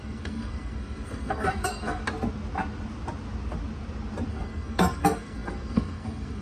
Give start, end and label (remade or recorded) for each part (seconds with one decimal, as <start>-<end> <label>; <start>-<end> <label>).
0.0-2.0 remade; 2.0-4.3 recorded; 4.3-6.4 remade